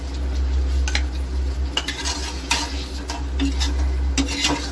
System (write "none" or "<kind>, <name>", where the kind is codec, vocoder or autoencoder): none